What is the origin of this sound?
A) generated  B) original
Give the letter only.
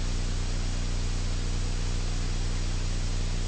B